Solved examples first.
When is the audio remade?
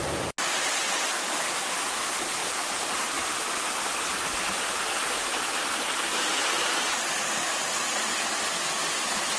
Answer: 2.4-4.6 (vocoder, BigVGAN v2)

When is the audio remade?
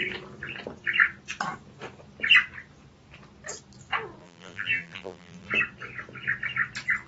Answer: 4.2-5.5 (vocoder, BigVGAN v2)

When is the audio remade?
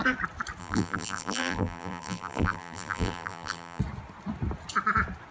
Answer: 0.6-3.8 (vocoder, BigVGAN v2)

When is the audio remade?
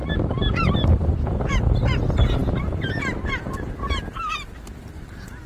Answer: none